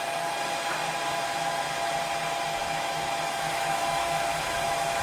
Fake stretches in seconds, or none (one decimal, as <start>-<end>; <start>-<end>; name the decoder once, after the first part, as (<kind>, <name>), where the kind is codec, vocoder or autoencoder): 2.6-5.0 (autoencoder, DAC-VAE)